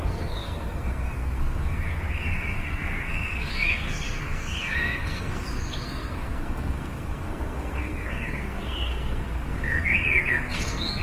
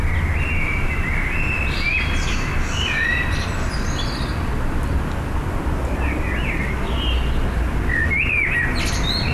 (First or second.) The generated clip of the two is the first